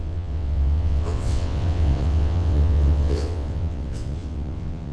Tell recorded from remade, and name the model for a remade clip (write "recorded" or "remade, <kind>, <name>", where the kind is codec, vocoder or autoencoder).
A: remade, vocoder, WaveNeXt